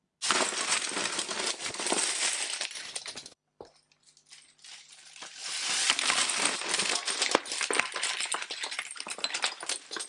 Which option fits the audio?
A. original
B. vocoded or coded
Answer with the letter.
A